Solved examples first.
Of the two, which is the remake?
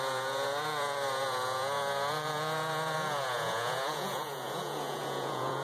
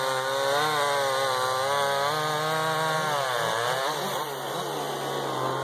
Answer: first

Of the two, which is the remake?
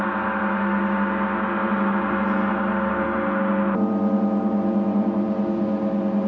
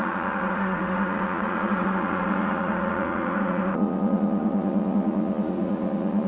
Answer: second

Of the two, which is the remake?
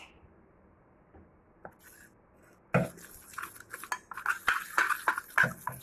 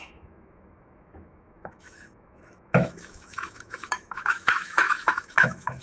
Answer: second